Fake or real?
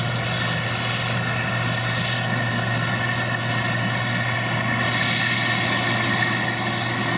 real